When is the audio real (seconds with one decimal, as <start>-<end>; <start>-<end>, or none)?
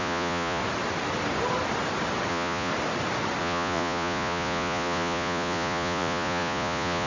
0.6-2.3; 2.7-3.4